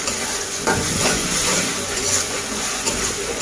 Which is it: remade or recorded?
remade